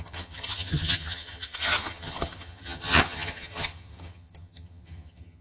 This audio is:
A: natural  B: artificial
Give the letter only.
B